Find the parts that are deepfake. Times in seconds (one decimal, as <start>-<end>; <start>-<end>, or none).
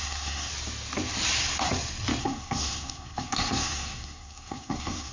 0.0-0.5; 2.2-5.1